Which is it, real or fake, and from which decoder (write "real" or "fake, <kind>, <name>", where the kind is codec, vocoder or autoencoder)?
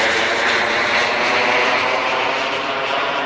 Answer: real